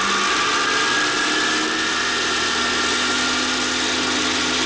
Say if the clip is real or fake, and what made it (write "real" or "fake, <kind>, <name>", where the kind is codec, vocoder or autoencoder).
real